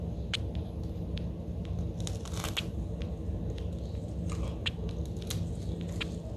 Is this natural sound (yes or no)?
yes